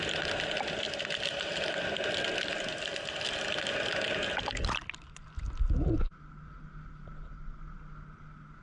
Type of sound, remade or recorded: recorded